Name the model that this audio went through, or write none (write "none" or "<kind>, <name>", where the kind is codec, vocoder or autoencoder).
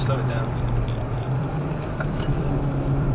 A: vocoder, BigVGAN v2